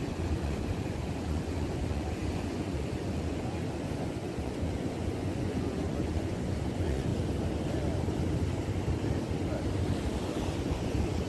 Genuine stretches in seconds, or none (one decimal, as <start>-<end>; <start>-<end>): 7.1-10.6